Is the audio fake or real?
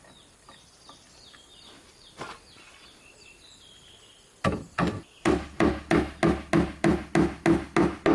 real